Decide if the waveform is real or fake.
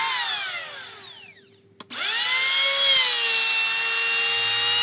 real